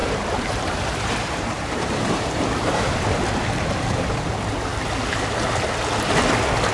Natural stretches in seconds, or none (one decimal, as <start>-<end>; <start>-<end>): 2.9-6.7